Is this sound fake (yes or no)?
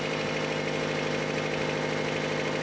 no